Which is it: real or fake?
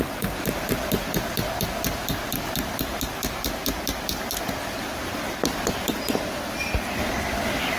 real